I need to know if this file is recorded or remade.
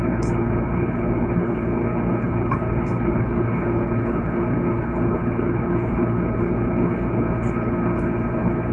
remade